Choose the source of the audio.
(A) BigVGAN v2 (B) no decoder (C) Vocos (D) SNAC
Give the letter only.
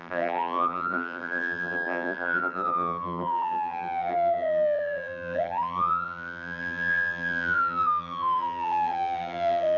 A